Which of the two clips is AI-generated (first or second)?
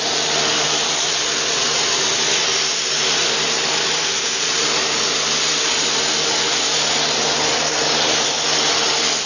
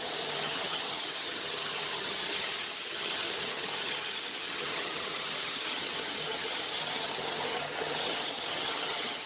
second